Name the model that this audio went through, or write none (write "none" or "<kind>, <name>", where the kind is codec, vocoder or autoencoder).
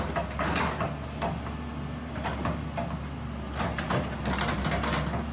none